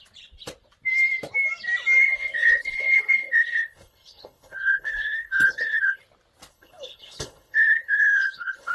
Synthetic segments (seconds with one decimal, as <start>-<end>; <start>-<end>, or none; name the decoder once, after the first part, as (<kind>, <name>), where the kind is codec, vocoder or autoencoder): 2.0-6.0 (codec, HILCodec); 6.5-8.7